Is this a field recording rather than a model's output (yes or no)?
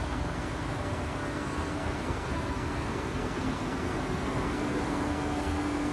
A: no